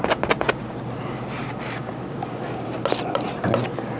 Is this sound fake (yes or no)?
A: no